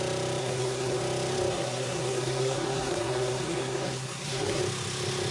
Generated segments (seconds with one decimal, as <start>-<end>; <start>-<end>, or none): 0.4-1.0; 1.5-4.6